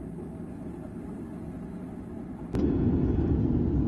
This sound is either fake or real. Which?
real